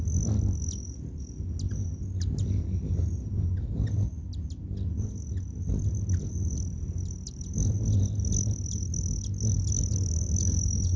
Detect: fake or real real